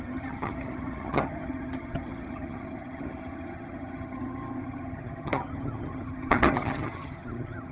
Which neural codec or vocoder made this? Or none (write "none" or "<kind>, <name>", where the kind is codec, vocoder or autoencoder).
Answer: vocoder, HiFi-GAN